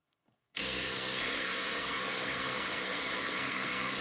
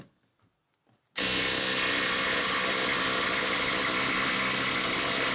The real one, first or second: second